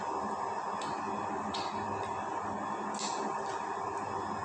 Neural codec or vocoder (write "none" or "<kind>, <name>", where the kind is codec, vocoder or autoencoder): none